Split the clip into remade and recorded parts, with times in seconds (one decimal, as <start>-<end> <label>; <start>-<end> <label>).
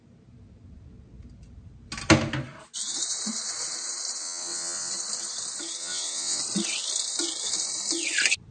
0.0-4.2 recorded; 4.2-4.9 remade; 4.9-5.8 recorded; 5.8-6.4 remade; 6.4-8.5 recorded